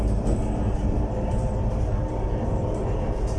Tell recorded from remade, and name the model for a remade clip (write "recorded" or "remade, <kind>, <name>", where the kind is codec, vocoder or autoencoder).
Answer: recorded